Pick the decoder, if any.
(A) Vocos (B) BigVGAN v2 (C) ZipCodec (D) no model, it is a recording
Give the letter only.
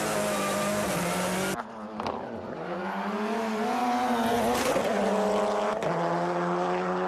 D